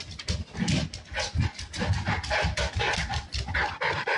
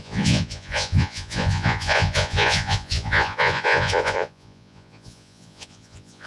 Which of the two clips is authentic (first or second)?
first